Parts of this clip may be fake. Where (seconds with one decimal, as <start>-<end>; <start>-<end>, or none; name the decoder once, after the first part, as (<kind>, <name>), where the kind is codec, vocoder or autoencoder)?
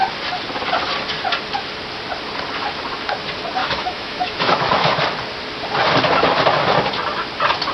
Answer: 3.6-5.0 (autoencoder, DAC-VAE)